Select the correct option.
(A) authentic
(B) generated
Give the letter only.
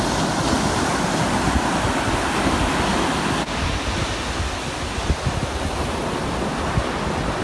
A